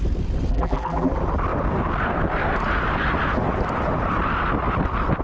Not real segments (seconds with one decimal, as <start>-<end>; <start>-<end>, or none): 0.5-1.1